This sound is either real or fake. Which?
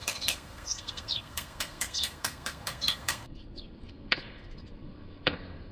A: fake